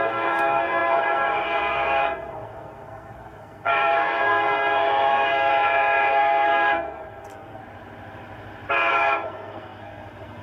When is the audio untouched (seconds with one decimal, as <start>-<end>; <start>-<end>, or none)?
5.5-6.1; 7.6-8.9